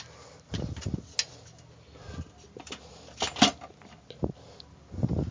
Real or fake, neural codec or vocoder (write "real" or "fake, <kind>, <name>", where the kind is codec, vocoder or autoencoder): real